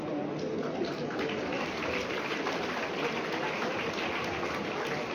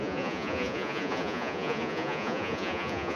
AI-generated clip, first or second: second